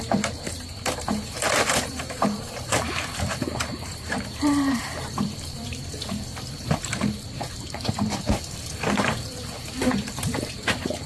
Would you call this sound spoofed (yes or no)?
yes